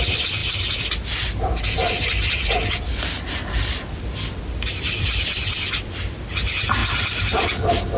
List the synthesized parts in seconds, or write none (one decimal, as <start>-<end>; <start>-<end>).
none